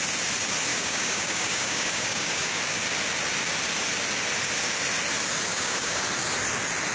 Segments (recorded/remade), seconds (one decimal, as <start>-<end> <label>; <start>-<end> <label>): 0.0-0.7 recorded; 0.7-2.6 remade; 2.6-5.5 recorded; 5.5-6.0 remade; 6.0-6.9 recorded